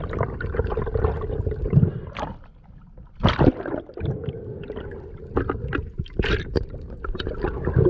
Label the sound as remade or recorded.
recorded